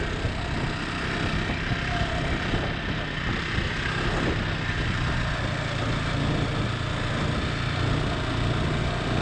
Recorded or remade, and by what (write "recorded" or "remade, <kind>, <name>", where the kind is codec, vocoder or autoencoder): recorded